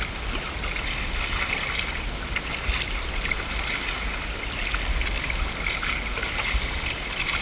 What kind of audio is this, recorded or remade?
recorded